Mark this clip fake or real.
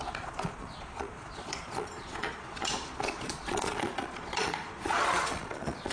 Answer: fake